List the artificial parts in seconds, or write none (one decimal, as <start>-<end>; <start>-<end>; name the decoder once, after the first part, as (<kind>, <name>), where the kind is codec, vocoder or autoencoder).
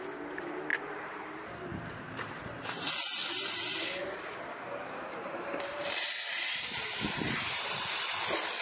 0.7-2.9 (vocoder, BigVGAN v2); 4.0-8.0